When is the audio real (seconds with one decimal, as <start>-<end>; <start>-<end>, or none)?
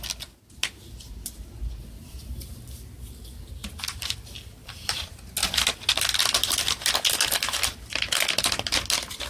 0.0-3.6; 5.1-9.3